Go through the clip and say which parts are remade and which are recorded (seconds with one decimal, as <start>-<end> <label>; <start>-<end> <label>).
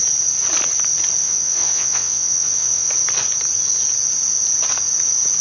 0.0-1.2 recorded; 1.2-2.9 remade; 2.9-5.4 recorded